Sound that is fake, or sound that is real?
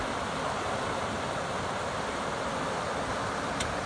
real